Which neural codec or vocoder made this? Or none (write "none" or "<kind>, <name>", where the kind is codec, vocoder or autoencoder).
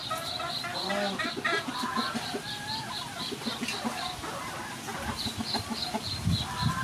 none